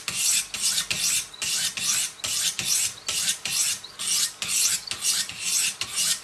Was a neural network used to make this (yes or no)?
no